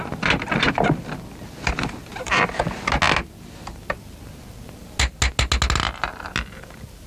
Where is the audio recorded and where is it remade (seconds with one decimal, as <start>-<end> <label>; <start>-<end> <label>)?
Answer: 0.0-2.1 recorded; 2.1-2.6 remade; 2.6-7.1 recorded